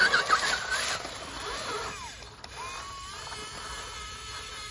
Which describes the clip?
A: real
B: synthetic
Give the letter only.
A